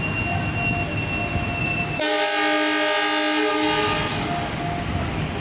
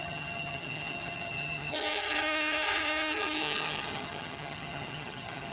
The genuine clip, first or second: first